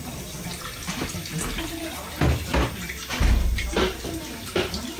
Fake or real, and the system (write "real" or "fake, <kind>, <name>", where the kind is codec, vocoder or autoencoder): real